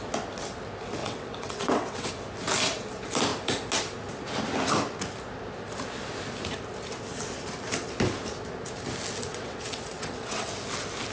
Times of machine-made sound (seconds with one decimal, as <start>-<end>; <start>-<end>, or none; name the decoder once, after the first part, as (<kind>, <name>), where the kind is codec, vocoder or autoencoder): 1.0-2.1 (vocoder, WaveNeXt); 9.3-10.5